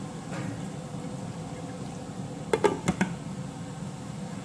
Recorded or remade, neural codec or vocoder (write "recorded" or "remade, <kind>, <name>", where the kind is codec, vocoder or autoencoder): recorded